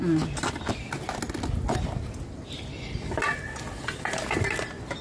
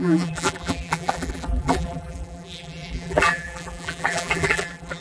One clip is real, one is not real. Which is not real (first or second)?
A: second